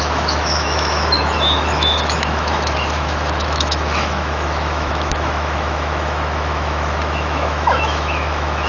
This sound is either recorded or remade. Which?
remade